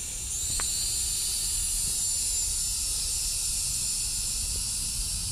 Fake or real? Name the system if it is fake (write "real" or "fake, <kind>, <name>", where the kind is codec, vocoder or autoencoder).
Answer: real